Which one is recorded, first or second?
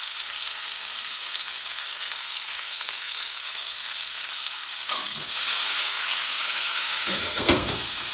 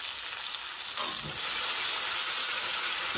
second